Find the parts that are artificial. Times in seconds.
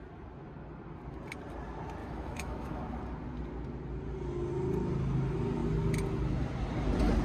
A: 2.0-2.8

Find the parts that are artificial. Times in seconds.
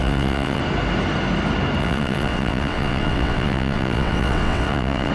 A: 0.0-0.6; 1.8-5.1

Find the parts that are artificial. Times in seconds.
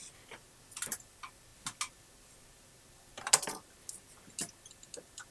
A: none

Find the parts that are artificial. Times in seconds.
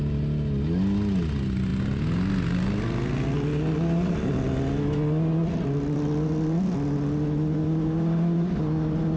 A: none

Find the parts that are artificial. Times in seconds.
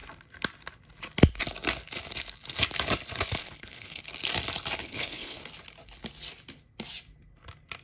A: 3.4-4.0; 4.8-5.4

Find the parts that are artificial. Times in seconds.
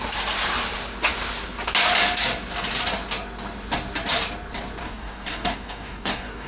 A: 4.8-6.5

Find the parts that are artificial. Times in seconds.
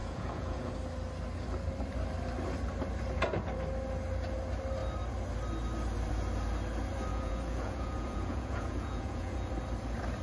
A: 0.0-0.7; 7.1-9.5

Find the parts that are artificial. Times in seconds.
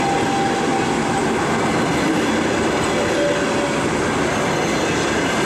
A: none